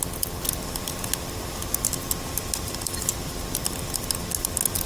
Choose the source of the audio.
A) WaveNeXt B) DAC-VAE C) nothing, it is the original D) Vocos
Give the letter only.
C